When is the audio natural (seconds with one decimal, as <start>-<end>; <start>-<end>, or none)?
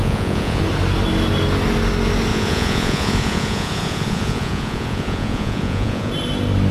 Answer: 0.6-2.3; 6.1-6.7